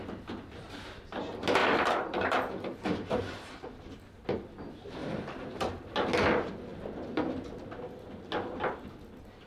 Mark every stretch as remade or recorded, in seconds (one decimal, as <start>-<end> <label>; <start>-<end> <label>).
0.0-1.6 recorded; 1.6-3.7 remade; 3.7-5.0 recorded; 5.0-5.9 remade; 5.9-9.5 recorded